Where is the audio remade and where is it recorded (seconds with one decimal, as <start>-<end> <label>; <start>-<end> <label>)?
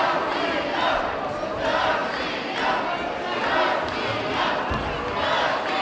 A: 0.0-5.8 recorded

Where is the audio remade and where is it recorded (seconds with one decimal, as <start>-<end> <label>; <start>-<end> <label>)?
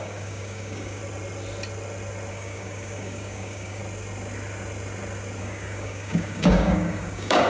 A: 0.0-1.0 remade; 1.0-2.3 recorded; 2.3-3.8 remade; 3.8-5.4 recorded; 5.4-7.5 remade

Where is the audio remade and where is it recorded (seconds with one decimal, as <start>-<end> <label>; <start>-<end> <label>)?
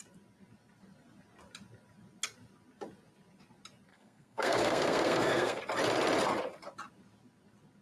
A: 0.0-3.9 recorded; 3.9-5.6 remade; 5.6-7.8 recorded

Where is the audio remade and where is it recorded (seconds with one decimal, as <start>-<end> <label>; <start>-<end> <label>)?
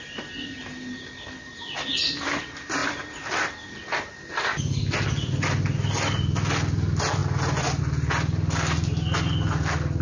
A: 0.0-10.0 recorded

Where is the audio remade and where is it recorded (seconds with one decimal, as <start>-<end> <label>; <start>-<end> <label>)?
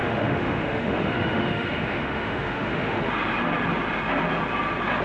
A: 0.0-3.0 remade; 3.0-5.0 recorded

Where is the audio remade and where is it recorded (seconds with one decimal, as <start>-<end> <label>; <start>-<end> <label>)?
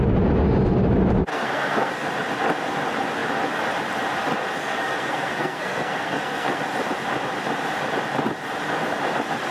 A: 0.0-1.3 recorded; 1.3-1.9 remade; 1.9-4.6 recorded; 4.6-6.6 remade; 6.6-9.5 recorded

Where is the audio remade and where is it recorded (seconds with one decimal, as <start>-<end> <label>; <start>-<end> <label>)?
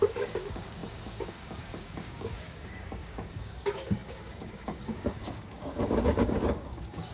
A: 0.0-7.1 remade